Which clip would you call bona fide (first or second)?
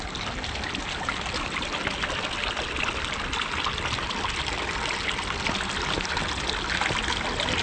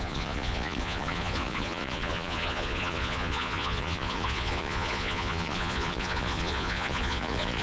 first